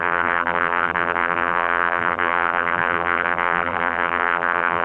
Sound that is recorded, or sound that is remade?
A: remade